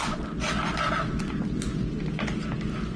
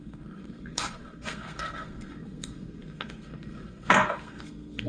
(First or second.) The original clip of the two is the first